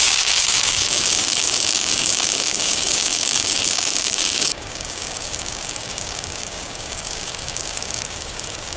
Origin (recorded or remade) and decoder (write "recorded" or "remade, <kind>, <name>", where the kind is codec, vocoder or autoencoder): remade, codec, DAC